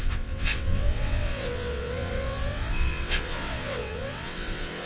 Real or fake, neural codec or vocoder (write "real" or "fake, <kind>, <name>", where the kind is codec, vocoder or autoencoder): fake, vocoder, WaveNeXt